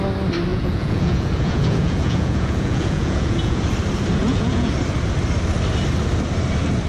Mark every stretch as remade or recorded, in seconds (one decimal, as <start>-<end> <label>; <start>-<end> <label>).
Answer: 0.0-0.5 recorded; 0.5-3.6 remade; 3.6-4.2 recorded; 4.2-4.7 remade; 4.7-6.9 recorded